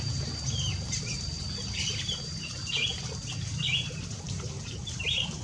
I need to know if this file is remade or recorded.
remade